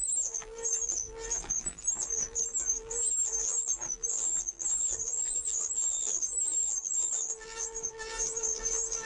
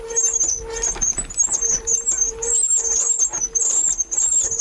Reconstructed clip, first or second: first